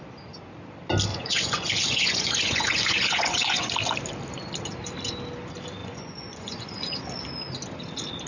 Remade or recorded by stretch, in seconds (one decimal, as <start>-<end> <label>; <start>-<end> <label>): 0.0-1.1 recorded; 1.1-3.7 remade; 3.7-5.8 recorded; 5.8-7.0 remade; 7.0-8.3 recorded

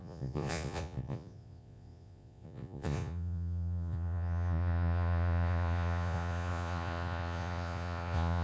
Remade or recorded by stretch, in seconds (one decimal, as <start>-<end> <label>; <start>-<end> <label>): 0.0-8.4 remade

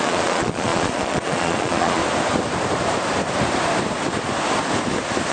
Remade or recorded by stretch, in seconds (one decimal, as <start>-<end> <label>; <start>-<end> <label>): 0.0-2.0 remade; 2.0-5.3 recorded